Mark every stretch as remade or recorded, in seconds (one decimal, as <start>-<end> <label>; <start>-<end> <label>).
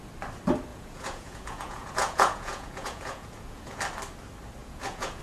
0.0-0.7 recorded; 0.7-3.8 remade; 3.8-4.6 recorded; 4.6-5.2 remade